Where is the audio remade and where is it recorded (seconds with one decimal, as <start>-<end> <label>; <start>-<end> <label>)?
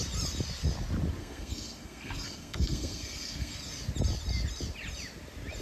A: 0.0-1.2 recorded; 1.2-3.5 remade; 3.5-5.6 recorded